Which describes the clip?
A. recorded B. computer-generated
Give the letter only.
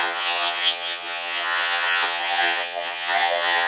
B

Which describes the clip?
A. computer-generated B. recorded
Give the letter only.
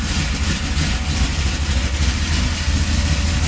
B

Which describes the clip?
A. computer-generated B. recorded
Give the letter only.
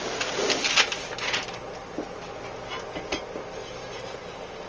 B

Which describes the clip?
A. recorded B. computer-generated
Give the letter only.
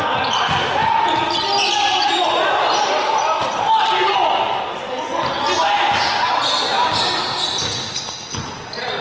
A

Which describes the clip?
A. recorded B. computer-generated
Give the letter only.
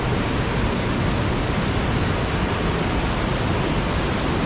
A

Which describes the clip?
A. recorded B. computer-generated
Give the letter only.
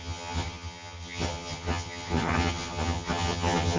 B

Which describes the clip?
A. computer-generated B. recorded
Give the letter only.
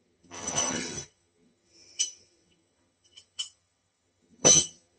A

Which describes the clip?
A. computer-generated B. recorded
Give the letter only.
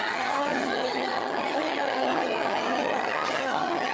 A